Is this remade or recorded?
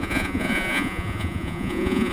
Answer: remade